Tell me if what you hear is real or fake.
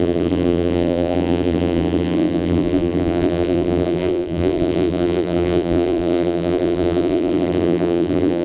fake